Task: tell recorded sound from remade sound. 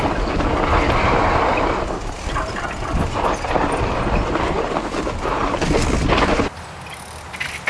recorded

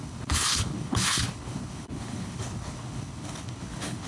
remade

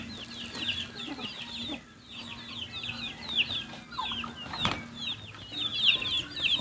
recorded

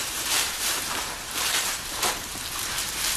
remade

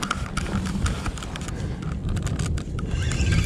recorded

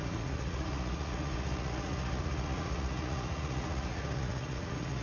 remade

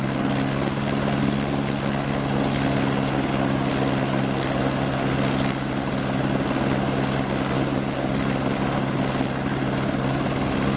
recorded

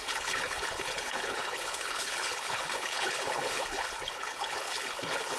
remade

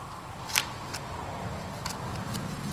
recorded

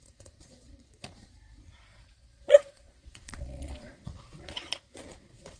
remade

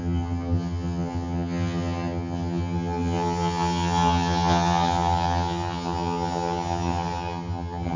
remade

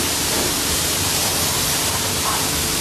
recorded